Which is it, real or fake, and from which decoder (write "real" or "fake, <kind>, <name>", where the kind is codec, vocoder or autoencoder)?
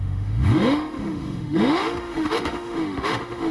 fake, autoencoder, DAC-VAE